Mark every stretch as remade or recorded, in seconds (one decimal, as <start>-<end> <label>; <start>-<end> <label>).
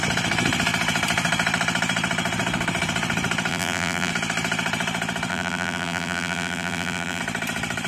0.0-3.5 recorded; 3.5-4.1 remade; 4.1-5.3 recorded; 5.3-7.2 remade; 7.2-7.9 recorded